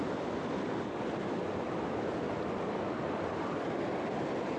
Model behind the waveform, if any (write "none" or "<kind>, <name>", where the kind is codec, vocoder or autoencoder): none